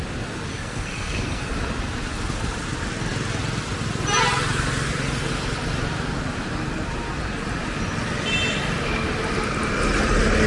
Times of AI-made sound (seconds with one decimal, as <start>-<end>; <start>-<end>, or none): 0.5-1.4